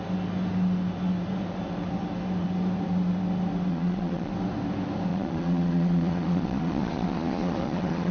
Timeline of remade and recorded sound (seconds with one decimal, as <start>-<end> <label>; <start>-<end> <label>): 0.0-3.7 recorded; 3.7-4.3 remade; 4.3-5.1 recorded; 5.1-8.1 remade